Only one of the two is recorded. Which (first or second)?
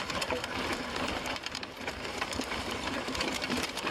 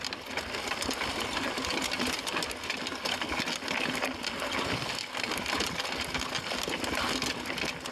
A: second